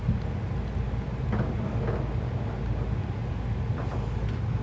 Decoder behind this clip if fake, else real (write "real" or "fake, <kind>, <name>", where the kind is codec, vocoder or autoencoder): real